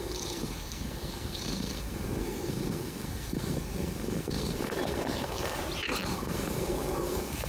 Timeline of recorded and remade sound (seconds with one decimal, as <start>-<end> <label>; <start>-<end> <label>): 0.0-5.6 remade; 5.6-6.1 recorded; 6.1-7.5 remade